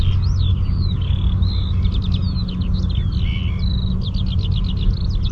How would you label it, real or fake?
real